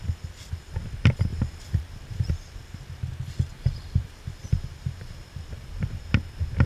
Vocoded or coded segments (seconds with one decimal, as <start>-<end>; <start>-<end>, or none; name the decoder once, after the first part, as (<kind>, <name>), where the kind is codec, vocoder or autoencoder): 1.3-2.3 (vocoder, BigVGAN v2); 3.5-6.0